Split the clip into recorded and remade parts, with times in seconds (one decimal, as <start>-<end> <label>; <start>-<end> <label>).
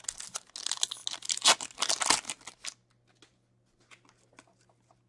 0.0-5.1 recorded